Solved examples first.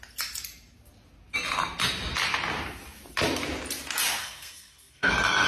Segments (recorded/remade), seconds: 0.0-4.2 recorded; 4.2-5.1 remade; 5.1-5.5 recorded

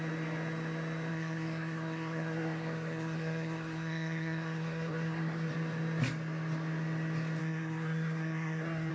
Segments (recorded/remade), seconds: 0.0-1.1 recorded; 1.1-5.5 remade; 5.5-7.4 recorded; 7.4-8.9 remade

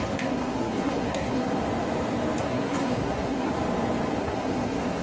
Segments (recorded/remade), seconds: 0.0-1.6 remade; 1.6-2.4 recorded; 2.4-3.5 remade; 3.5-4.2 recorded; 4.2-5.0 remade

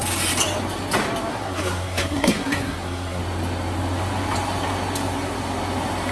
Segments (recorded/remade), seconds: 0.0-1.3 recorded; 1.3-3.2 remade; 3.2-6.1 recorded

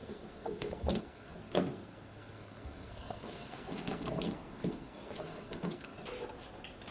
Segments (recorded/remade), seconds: 0.0-5.9 remade; 5.9-6.9 recorded